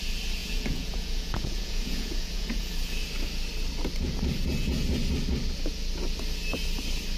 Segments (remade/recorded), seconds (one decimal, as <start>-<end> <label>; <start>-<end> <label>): 0.0-0.4 recorded; 0.4-2.7 remade; 2.7-7.2 recorded